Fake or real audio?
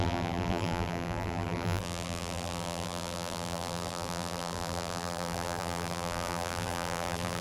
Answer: fake